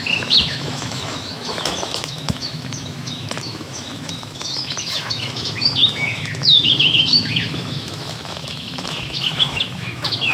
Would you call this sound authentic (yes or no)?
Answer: no